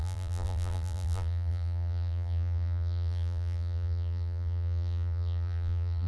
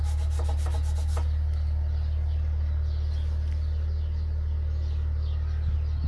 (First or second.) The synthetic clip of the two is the first